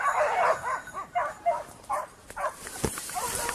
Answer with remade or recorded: remade